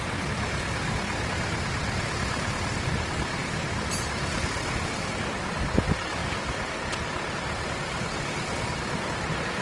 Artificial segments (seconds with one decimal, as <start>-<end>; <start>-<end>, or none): none